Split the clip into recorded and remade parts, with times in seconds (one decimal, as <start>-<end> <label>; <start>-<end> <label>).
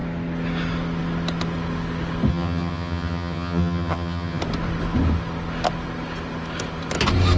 0.0-2.3 recorded; 2.3-4.4 remade; 4.4-7.4 recorded